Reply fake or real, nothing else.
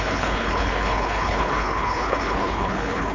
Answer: fake